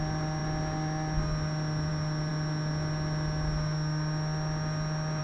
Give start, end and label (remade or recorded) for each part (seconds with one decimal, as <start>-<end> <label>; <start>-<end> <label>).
0.0-5.2 recorded